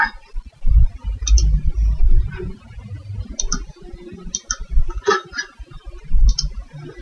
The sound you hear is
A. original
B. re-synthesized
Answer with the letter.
A